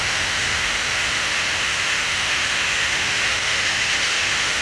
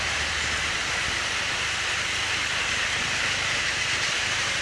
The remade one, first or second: first